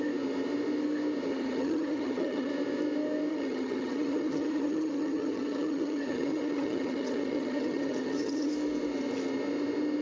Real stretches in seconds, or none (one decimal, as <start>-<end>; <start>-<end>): 0.0-1.3; 2.5-3.3; 8.5-10.0